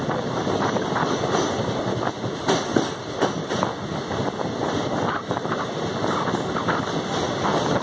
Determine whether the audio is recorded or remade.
recorded